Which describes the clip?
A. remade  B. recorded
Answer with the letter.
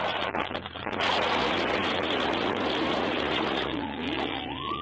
A